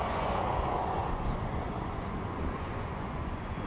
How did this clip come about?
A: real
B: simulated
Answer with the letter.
B